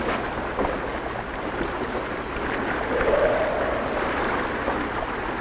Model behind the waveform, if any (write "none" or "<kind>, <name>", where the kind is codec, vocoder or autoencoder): none